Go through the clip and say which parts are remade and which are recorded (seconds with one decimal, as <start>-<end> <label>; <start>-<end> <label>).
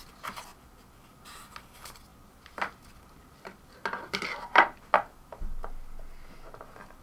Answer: 0.0-7.0 recorded